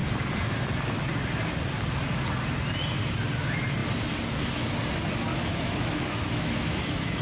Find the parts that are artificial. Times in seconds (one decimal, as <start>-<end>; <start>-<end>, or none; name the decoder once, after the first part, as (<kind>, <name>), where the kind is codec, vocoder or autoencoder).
5.3-7.2 (autoencoder, DAC-VAE)

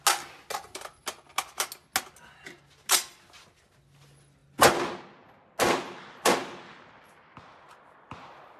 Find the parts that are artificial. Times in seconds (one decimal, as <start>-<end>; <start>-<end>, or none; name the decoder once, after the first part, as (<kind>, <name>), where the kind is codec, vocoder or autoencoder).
none

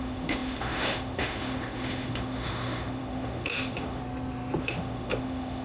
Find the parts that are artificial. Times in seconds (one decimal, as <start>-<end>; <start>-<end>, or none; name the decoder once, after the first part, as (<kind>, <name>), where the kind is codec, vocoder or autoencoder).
0.0-4.0 (autoencoder, DAC-VAE); 4.6-5.6